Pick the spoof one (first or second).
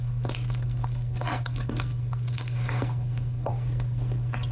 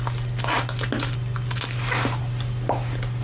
first